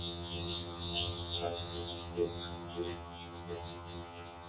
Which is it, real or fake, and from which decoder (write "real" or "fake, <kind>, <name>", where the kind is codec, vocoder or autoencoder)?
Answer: fake, vocoder, HiFi-GAN